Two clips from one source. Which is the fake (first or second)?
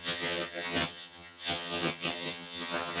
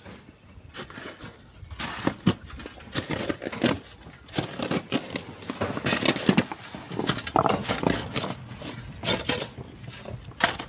first